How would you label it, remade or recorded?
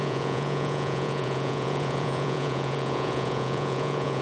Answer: remade